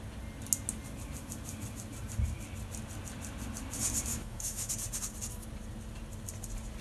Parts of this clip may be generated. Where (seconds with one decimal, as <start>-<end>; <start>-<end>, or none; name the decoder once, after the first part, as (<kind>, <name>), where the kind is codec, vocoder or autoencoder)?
4.1-4.7 (autoencoder, DAC-VAE)